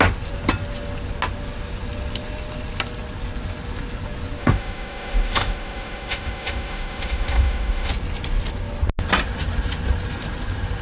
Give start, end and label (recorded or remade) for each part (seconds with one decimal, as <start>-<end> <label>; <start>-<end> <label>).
0.0-4.4 recorded; 4.4-7.9 remade; 7.9-10.8 recorded